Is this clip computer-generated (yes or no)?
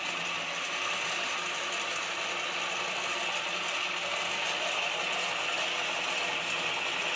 no